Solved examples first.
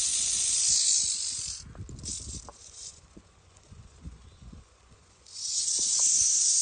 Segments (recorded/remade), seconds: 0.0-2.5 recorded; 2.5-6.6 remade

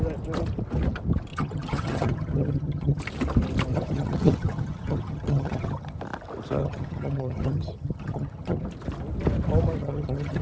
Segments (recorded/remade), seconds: 0.0-1.3 recorded; 1.3-3.0 remade; 3.0-3.7 recorded; 3.7-6.0 remade; 6.0-6.6 recorded; 6.6-8.6 remade; 8.6-9.8 recorded; 9.8-10.4 remade

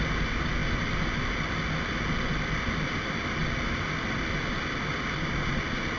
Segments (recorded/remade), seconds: 0.0-6.0 recorded

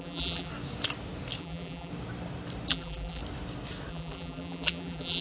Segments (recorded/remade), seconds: 0.0-0.5 remade; 0.5-1.4 recorded; 1.4-1.9 remade; 1.9-2.7 recorded; 2.7-3.2 remade; 3.2-3.9 recorded; 3.9-5.2 remade

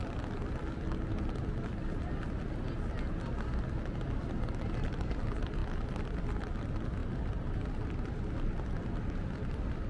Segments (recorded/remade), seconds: 0.0-9.9 recorded

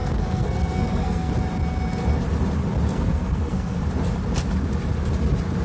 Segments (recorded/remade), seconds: 0.0-1.3 remade; 1.3-2.9 recorded; 2.9-3.8 remade; 3.8-5.6 recorded